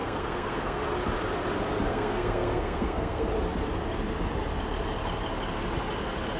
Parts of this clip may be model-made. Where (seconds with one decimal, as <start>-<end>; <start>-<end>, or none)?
0.0-0.8; 1.9-3.3